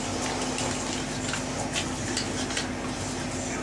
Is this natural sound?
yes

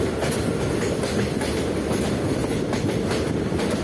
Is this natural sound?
yes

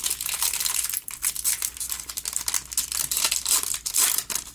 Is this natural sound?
yes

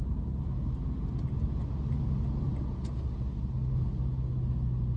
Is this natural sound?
yes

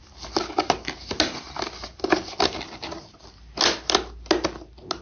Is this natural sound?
yes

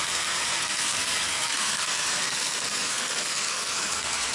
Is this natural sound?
no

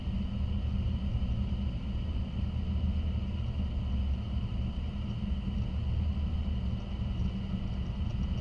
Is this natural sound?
yes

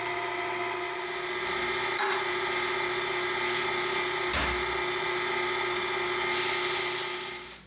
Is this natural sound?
yes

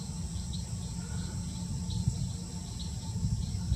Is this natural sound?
yes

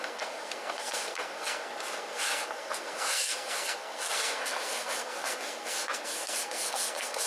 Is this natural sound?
no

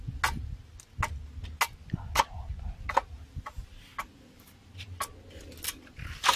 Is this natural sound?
yes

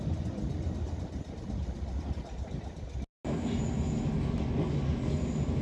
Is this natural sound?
yes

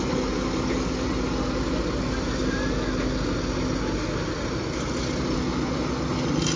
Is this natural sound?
yes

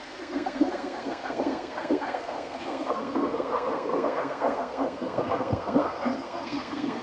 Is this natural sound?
no